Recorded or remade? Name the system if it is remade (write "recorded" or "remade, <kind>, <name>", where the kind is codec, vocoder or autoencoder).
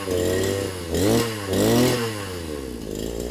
recorded